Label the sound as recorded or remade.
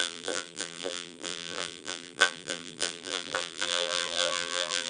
remade